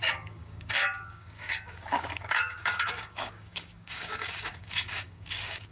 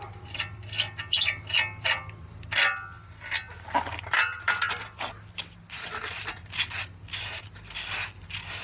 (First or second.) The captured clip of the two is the second